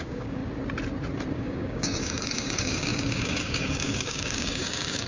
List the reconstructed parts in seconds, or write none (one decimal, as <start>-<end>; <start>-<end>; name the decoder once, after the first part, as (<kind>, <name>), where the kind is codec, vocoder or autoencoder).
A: 0.0-0.4 (codec, DAC); 1.3-5.1